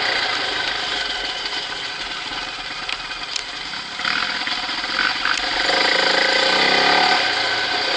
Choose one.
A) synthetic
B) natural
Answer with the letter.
B